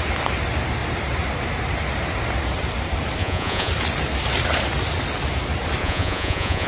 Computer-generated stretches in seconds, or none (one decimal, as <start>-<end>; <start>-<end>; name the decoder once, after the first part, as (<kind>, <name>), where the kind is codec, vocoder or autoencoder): 3.2-3.7 (vocoder, Vocos); 5.8-6.7